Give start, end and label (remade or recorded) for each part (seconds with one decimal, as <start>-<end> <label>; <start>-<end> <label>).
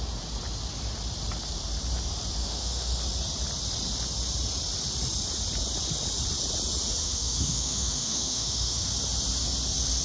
0.0-2.4 recorded; 2.4-3.0 remade; 3.0-7.0 recorded; 7.0-8.8 remade; 8.8-10.0 recorded